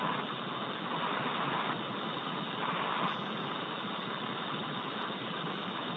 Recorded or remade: recorded